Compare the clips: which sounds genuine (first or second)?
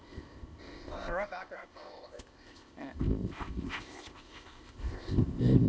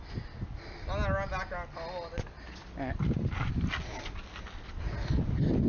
second